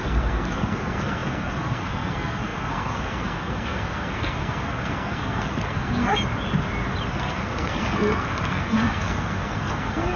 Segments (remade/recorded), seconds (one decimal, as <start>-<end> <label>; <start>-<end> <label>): 0.0-6.1 remade; 6.1-7.1 recorded; 7.1-10.2 remade